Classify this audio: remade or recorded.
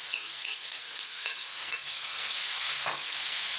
remade